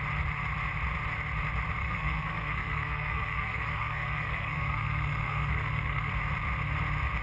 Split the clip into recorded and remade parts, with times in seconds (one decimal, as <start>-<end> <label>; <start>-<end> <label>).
0.0-1.8 recorded; 1.8-6.1 remade; 6.1-7.2 recorded